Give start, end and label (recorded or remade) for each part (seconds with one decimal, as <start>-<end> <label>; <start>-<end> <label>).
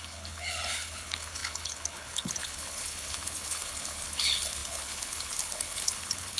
0.0-6.4 remade